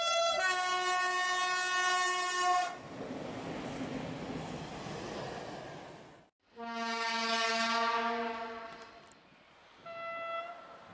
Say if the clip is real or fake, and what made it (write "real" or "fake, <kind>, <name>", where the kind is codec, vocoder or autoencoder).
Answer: real